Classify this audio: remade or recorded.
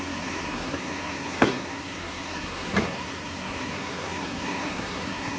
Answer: remade